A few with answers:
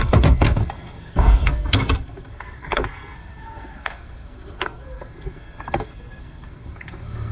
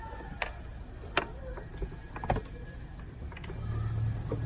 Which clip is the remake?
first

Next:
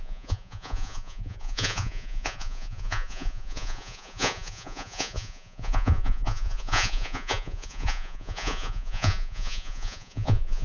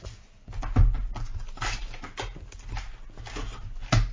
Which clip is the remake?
first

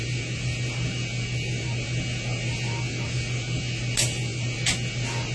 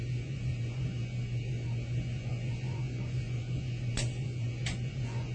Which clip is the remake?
second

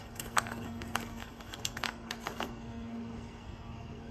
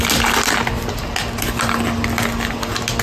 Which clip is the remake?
first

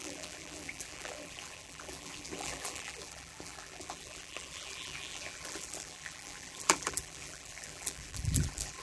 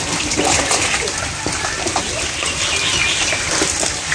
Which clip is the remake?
first